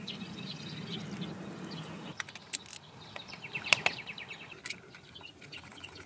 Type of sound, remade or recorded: recorded